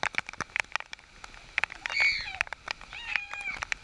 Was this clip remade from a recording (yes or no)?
no